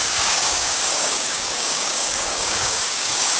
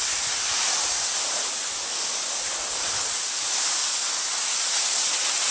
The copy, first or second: first